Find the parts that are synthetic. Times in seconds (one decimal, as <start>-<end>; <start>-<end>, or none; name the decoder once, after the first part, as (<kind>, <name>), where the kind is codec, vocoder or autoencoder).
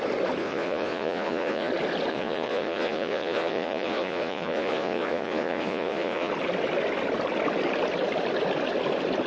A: 0.4-1.7 (vocoder, Vocos); 2.1-6.3